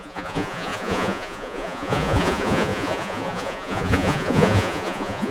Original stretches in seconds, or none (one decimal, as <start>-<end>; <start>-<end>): none